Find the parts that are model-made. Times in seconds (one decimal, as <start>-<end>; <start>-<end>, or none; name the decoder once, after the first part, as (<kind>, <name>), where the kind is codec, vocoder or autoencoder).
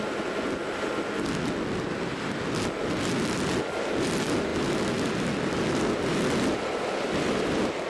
none